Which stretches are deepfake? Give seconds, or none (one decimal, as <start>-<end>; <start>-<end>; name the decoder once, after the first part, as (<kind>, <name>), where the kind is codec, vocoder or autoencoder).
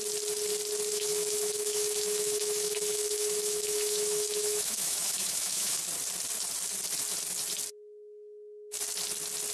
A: 0.9-5.8 (autoencoder, DAC-VAE)